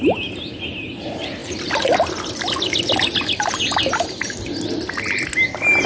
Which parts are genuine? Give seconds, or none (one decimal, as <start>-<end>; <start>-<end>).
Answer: 0.0-5.9